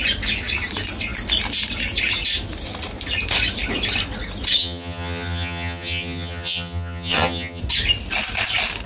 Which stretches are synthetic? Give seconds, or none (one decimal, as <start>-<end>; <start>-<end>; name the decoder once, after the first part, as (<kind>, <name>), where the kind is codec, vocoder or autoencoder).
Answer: 4.6-7.6 (vocoder, HiFi-GAN)